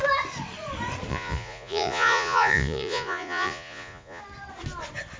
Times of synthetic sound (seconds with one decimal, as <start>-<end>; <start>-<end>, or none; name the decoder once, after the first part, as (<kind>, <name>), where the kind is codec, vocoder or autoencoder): 1.1-4.2 (vocoder, Vocos)